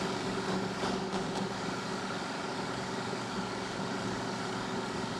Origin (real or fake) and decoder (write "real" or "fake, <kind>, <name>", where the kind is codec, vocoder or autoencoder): fake, codec, DAC